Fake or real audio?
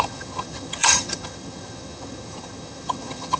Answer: fake